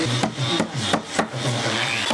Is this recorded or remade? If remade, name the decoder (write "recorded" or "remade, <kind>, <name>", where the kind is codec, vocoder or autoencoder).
recorded